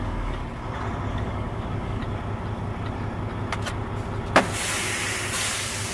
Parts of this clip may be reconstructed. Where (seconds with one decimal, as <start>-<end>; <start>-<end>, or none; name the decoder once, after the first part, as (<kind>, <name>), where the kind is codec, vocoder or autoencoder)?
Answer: 0.0-0.4 (codec, DAC); 1.1-2.0; 5.5-5.9